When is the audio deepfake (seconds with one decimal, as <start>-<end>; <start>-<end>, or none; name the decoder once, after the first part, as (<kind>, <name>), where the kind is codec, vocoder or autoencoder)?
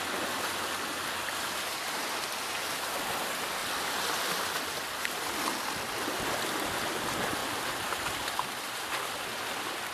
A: 3.6-6.3 (vocoder, BigVGAN v2); 7.4-9.4